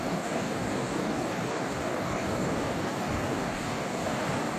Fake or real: fake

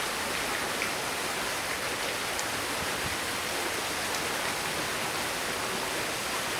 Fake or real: real